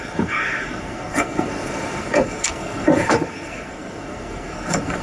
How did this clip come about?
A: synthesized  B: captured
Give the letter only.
A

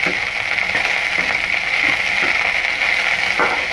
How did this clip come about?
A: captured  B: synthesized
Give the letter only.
A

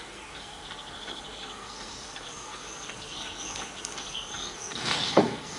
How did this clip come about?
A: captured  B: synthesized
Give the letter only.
B